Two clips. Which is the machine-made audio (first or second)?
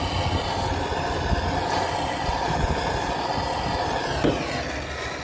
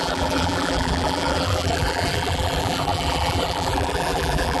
second